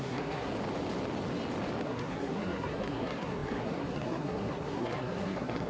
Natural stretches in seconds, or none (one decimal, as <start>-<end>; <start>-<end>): 0.5-1.8

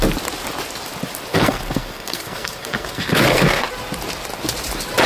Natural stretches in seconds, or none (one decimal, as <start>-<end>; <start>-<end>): 0.0-1.3; 3.6-5.1

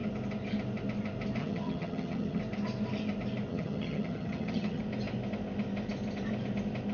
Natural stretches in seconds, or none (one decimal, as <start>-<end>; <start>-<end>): 0.0-1.4; 2.4-3.5; 4.8-6.9

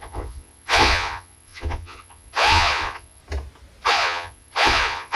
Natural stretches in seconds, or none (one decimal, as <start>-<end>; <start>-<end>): 3.2-3.9